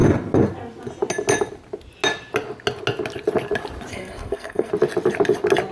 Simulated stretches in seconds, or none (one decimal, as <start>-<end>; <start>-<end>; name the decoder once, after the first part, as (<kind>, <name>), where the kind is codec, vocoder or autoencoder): 3.9-4.7 (codec, SNAC)